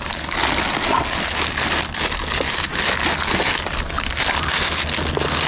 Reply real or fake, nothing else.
real